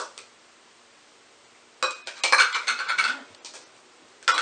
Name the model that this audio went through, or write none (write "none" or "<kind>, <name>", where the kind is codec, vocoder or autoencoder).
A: none